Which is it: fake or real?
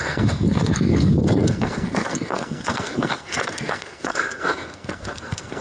fake